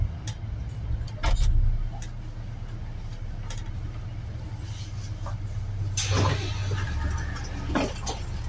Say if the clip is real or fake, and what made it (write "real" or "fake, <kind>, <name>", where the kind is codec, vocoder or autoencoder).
real